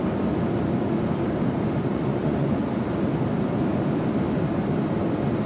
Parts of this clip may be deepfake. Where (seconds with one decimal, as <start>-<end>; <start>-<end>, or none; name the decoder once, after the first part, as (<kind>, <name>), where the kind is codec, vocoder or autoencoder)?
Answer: 1.9-2.6 (vocoder, Vocos)